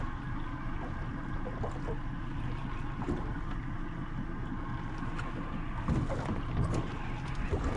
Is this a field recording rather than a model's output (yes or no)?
yes